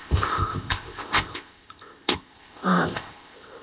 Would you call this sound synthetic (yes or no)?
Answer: yes